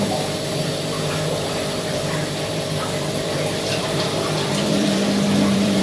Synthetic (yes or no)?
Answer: yes